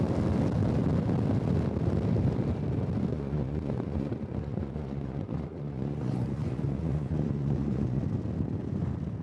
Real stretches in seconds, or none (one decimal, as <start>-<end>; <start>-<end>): 0.0-3.1; 8.0-9.2

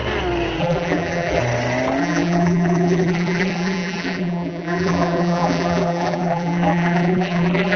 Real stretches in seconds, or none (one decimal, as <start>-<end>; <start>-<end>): 0.0-0.6; 1.4-2.0

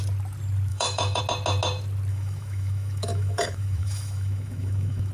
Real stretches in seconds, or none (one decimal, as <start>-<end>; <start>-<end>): 0.0-0.7; 1.2-2.1

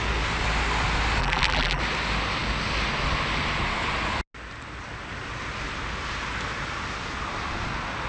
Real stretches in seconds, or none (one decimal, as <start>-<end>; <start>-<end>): 0.0-1.2; 1.8-8.1

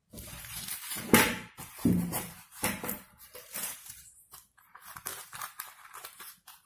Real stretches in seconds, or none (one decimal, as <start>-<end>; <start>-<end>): 5.1-5.9

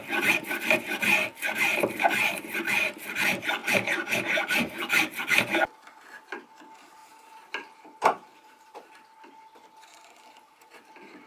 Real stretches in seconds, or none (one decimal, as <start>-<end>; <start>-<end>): 0.0-3.6; 5.2-7.0; 9.0-11.3

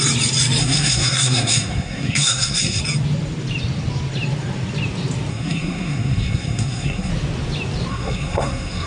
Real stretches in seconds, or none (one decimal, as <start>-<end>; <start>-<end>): 0.0-0.6; 2.8-5.3; 7.1-7.9

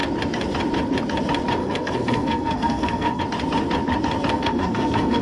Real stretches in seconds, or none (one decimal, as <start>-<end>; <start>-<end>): 0.0-1.6; 3.2-4.3